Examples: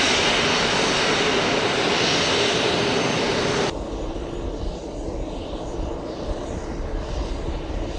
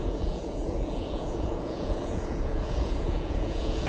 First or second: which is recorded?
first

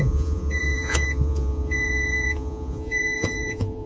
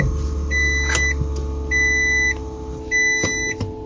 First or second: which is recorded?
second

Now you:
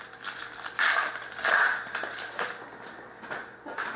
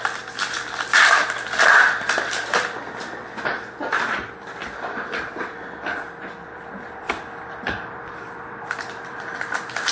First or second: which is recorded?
first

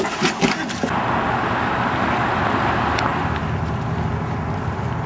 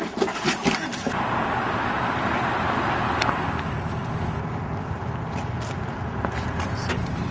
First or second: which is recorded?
first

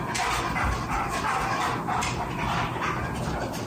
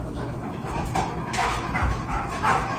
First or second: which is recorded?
first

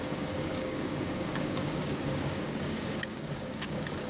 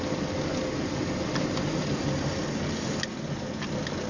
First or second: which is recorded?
second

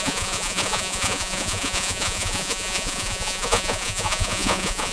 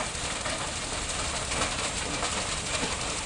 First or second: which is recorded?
second